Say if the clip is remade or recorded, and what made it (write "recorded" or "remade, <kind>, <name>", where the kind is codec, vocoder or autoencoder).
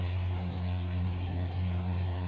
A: remade, codec, SNAC